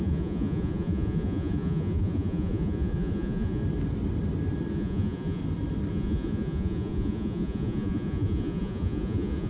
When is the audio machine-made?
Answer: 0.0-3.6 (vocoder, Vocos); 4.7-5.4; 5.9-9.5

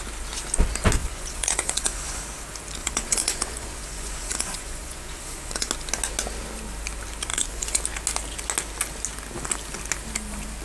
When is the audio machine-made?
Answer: 1.0-2.2 (vocoder, Vocos); 2.8-5.7; 7.3-7.8

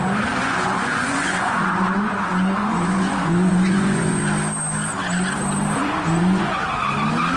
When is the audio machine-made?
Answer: 0.4-4.2 (vocoder, Vocos); 5.8-6.6

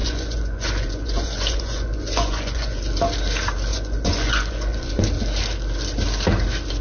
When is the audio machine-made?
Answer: 0.0-2.8 (vocoder, Vocos); 3.7-5.0

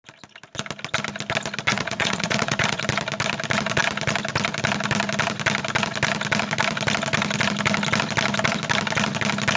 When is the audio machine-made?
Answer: 1.7-2.8 (vocoder, Vocos)

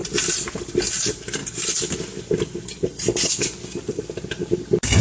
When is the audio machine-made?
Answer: none